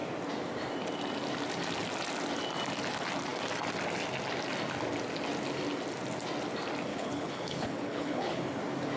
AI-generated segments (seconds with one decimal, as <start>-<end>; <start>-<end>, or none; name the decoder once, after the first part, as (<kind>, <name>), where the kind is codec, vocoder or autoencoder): 6.9-8.4 (codec, HILCodec)